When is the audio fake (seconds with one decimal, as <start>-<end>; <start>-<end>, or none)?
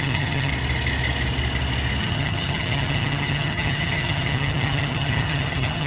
0.0-0.5; 2.0-5.9